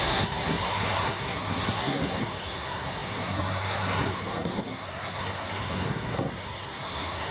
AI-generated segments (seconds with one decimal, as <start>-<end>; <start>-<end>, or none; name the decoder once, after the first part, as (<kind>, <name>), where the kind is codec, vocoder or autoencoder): 0.0-7.3 (codec, SNAC)